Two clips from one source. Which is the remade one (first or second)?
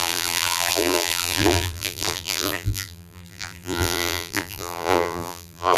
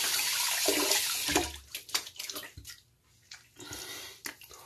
first